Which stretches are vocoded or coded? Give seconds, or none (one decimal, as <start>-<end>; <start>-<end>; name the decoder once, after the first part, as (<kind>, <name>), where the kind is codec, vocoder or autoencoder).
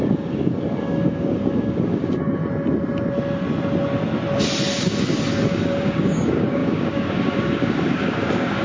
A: 0.0-2.4 (codec, DAC); 5.4-8.6